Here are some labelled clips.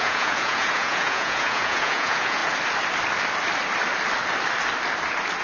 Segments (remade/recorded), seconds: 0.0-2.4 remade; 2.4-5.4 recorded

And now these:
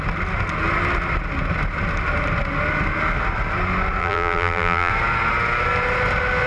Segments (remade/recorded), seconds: 0.0-4.0 recorded; 4.0-4.9 remade; 4.9-6.5 recorded

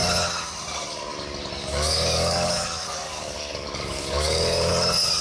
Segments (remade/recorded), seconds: 0.0-1.7 recorded; 1.7-4.7 remade; 4.7-5.2 recorded

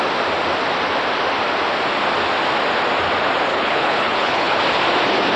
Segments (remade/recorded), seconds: 0.0-3.5 recorded; 3.5-4.6 remade; 4.6-5.4 recorded

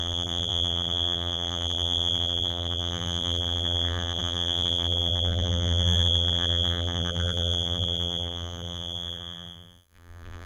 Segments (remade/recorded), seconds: 0.0-10.5 remade

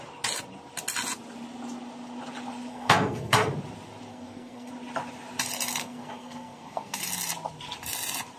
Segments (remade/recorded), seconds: 0.0-2.7 recorded; 2.7-3.5 remade; 3.5-4.1 recorded; 4.1-4.7 remade; 4.7-5.8 recorded; 5.8-7.0 remade; 7.0-8.4 recorded